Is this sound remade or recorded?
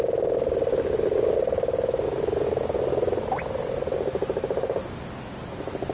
recorded